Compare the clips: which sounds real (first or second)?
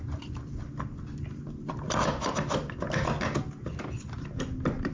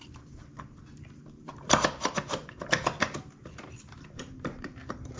first